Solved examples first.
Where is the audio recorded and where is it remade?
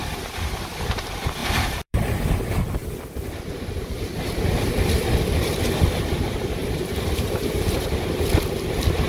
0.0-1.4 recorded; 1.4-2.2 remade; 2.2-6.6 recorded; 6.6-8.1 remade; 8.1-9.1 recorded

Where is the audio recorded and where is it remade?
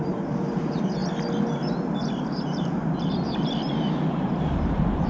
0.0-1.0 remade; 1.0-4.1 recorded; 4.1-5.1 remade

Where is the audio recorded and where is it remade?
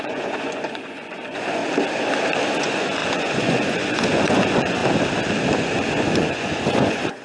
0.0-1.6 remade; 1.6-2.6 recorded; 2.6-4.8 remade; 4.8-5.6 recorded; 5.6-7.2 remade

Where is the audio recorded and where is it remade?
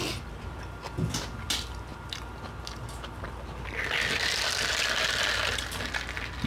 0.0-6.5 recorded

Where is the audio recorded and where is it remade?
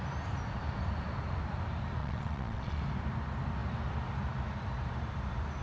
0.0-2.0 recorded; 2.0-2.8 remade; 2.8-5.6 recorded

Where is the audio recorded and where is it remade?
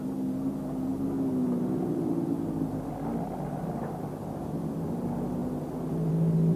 0.0-6.6 recorded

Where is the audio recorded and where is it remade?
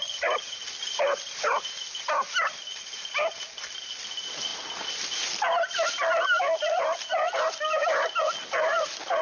0.0-9.2 recorded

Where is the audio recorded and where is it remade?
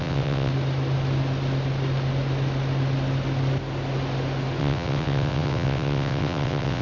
0.0-0.5 remade; 0.5-4.6 recorded; 4.6-6.8 remade